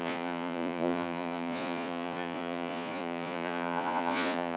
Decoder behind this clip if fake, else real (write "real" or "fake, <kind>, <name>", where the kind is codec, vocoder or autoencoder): fake, vocoder, Vocos